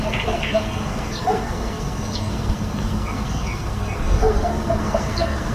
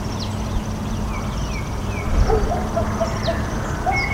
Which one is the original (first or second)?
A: second